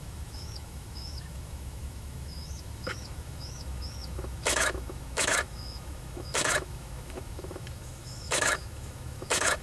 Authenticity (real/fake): fake